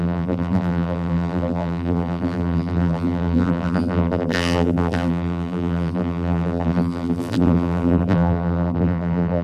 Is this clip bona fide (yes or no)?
no